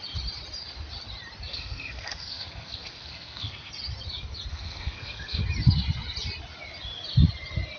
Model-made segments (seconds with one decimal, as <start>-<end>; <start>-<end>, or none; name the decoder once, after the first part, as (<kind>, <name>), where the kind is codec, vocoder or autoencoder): 1.5-3.7 (codec, SNAC); 4.5-5.4